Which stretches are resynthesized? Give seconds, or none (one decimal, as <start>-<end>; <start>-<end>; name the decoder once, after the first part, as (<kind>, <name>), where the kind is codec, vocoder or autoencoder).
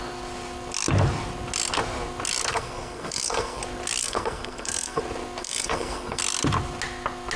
2.5-3.6 (codec, SNAC); 4.0-5.0; 5.4-6.2